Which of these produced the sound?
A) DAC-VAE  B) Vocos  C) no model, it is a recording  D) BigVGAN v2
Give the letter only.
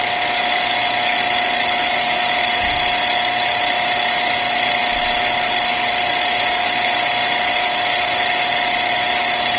C